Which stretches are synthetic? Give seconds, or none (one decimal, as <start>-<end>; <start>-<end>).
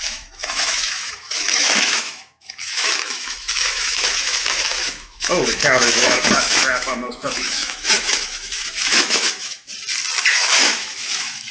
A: 0.0-9.7; 10.3-11.5